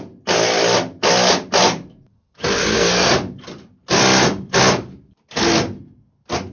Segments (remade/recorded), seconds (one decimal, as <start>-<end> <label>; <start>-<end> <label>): 0.0-2.6 recorded; 2.6-3.1 remade; 3.1-6.5 recorded